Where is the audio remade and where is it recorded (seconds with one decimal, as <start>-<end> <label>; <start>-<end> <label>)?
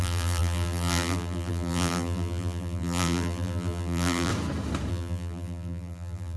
0.0-4.3 remade; 4.3-4.9 recorded; 4.9-6.4 remade